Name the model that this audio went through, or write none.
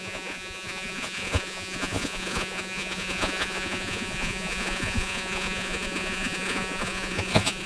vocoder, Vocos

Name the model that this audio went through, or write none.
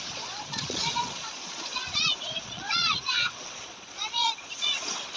vocoder, Vocos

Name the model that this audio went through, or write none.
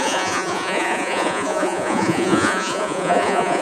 vocoder, Vocos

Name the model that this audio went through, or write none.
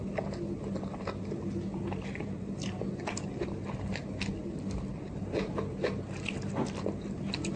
none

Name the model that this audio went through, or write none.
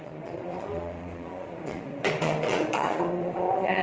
vocoder, Vocos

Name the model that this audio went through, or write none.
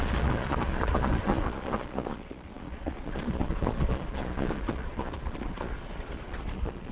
vocoder, Vocos